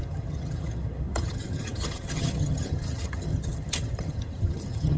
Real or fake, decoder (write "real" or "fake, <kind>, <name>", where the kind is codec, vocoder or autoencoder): fake, vocoder, HiFi-GAN